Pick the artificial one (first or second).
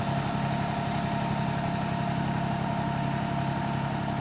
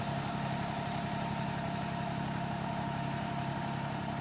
second